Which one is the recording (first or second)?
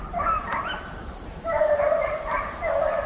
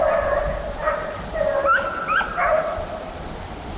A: second